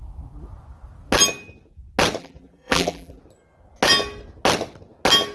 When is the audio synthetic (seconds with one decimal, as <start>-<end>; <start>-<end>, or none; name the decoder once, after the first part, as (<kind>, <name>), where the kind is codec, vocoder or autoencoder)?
2.2-3.2 (vocoder, BigVGAN v2)

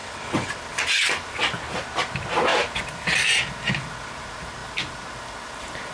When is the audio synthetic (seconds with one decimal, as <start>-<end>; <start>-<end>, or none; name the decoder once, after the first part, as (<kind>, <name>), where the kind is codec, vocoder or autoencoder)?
0.0-0.6 (vocoder, WaveNeXt)

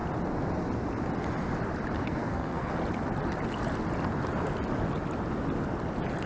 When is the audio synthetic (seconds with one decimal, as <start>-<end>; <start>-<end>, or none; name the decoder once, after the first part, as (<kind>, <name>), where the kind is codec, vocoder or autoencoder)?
2.0-2.7 (codec, SNAC)

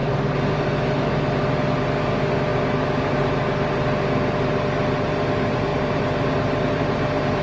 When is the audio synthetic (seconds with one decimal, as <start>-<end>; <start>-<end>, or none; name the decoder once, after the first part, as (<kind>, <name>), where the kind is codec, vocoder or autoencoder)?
0.0-1.4 (vocoder, BigVGAN v2); 5.7-7.4

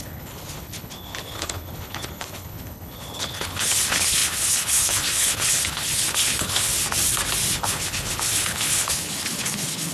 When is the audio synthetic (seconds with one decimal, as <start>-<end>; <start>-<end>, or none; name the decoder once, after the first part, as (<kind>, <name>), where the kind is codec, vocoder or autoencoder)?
0.0-6.7 (codec, HILCodec); 7.5-9.9